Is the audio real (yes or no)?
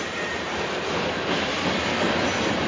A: yes